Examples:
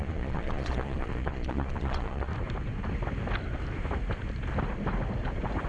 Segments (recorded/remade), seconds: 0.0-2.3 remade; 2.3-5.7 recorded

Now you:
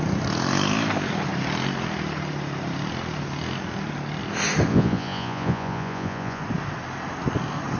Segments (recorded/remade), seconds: 0.0-4.7 recorded; 4.7-6.4 remade; 6.4-7.8 recorded

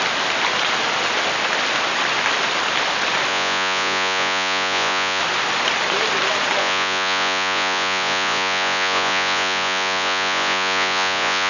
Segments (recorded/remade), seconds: 0.0-3.3 recorded; 3.3-5.2 remade; 5.2-6.6 recorded; 6.6-11.5 remade

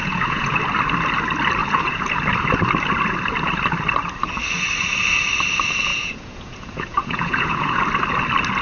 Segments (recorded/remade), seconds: 0.0-0.6 remade; 0.6-1.6 recorded; 1.6-2.1 remade; 2.1-5.9 recorded; 5.9-7.8 remade; 7.8-8.6 recorded

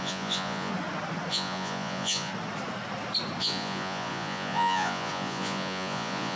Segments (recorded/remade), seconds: 0.0-0.7 remade; 0.7-1.3 recorded; 1.3-2.3 remade; 2.3-3.4 recorded; 3.4-6.4 remade

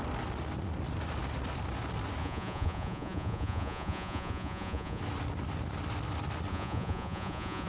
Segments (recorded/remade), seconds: 0.0-2.2 recorded; 2.2-5.0 remade; 5.0-6.5 recorded; 6.5-7.7 remade

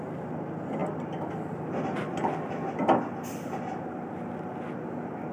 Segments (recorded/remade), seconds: 0.0-5.3 recorded

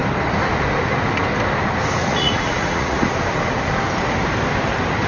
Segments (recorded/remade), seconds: 0.0-2.0 recorded; 2.0-3.1 remade; 3.1-5.1 recorded